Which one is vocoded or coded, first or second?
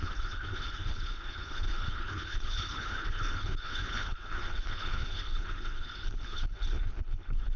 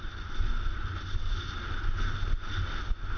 first